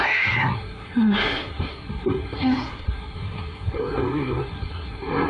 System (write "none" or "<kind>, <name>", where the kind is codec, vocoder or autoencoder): codec, SNAC